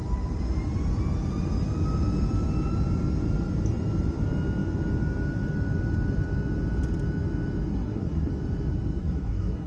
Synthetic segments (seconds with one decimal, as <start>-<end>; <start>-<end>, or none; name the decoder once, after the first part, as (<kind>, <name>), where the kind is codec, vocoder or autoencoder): 7.7-8.3 (codec, SNAC); 9.0-9.7